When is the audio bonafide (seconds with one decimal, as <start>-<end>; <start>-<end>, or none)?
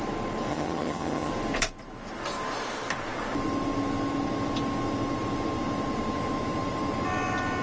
0.0-0.5; 1.3-7.6